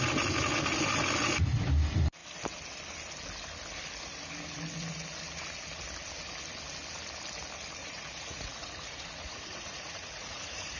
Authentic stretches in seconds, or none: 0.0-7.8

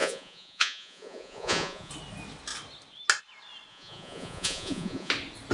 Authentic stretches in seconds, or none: 1.9-3.7; 5.1-5.5

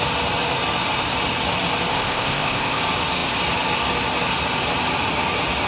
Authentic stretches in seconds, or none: 0.0-1.9; 2.8-5.7

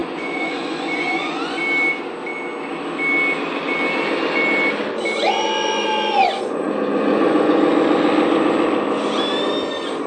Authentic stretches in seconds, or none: 1.6-5.2; 7.6-10.1

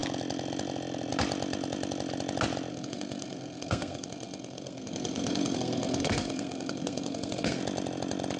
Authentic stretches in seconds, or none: 0.0-2.7; 7.6-8.4

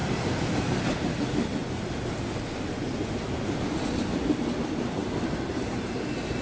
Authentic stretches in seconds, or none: 0.0-6.4

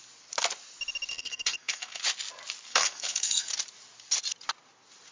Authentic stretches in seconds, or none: 0.0-1.1; 2.0-2.7; 3.5-5.1

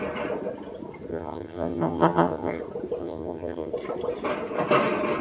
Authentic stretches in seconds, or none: 0.0-1.1; 2.6-3.0; 3.7-5.2